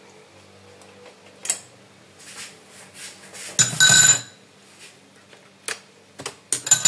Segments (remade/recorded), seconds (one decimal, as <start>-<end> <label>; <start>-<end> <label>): 0.0-6.9 recorded